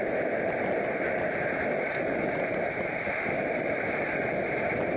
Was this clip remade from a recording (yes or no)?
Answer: no